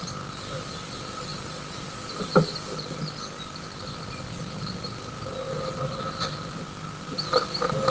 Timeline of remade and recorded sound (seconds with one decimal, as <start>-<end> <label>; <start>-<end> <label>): 0.0-7.9 recorded